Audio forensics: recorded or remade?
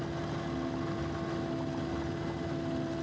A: recorded